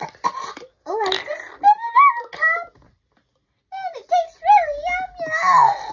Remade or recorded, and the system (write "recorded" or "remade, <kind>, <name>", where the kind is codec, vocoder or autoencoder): recorded